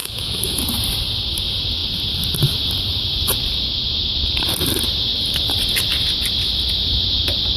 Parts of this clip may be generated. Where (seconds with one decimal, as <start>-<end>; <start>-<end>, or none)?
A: 0.0-0.6